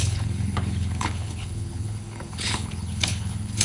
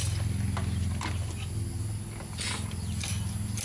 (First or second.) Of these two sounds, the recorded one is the second